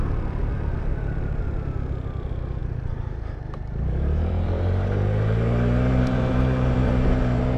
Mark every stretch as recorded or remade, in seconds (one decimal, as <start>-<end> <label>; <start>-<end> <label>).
0.0-0.9 recorded; 0.9-1.4 remade; 1.4-2.6 recorded; 2.6-7.6 remade